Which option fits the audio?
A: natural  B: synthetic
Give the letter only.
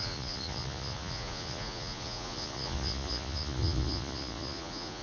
B